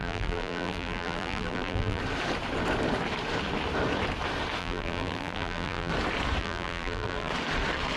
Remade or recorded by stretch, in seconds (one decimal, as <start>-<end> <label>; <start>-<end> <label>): 0.0-2.0 remade; 2.0-4.6 recorded; 4.6-5.9 remade; 5.9-6.4 recorded; 6.4-7.3 remade; 7.3-8.0 recorded